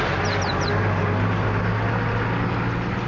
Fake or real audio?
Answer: real